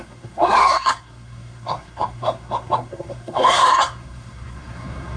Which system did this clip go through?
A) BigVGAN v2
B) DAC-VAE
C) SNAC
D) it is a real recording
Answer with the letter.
C